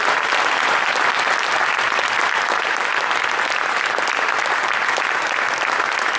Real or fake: real